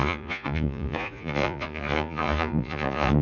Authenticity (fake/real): fake